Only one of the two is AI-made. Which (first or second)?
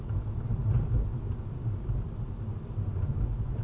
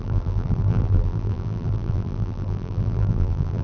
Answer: second